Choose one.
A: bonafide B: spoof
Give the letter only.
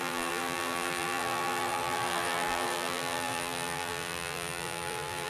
B